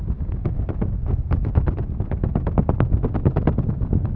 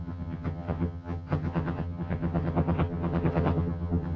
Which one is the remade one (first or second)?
second